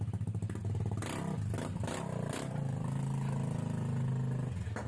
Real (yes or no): yes